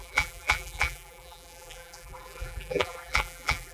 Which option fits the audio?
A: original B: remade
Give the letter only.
B